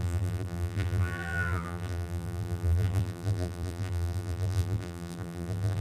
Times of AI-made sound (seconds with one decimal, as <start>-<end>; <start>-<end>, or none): 0.0-5.8